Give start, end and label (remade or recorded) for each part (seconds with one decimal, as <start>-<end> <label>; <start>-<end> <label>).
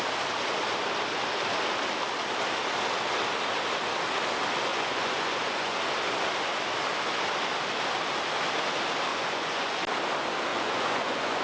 0.0-4.7 recorded; 4.7-5.8 remade; 5.8-9.1 recorded; 9.1-9.8 remade; 9.8-10.5 recorded; 10.5-11.4 remade